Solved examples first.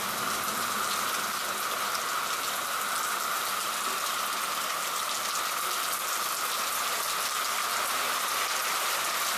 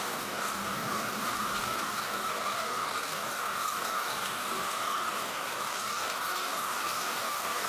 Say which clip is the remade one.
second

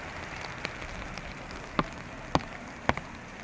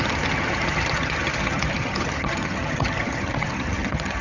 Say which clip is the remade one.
second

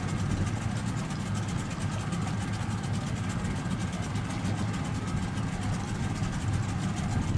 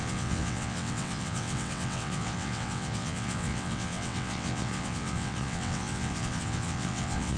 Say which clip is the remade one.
second